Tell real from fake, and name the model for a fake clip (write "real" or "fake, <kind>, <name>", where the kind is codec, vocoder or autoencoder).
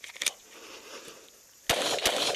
real